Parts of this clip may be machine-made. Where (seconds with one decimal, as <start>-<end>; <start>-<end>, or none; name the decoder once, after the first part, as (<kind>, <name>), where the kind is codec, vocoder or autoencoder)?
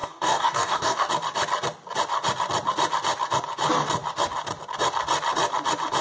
0.0-1.1 (codec, DAC)